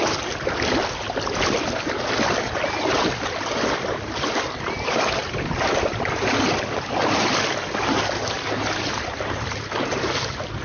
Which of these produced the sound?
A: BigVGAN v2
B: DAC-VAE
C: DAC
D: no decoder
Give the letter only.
D